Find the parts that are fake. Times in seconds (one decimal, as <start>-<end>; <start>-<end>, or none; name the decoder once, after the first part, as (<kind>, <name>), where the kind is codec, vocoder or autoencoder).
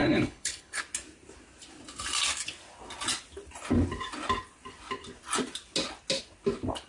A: 0.0-0.8 (codec, HILCodec)